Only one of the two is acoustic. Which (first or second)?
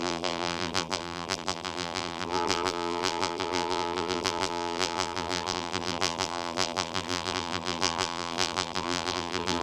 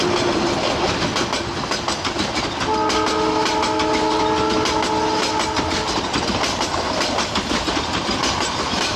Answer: second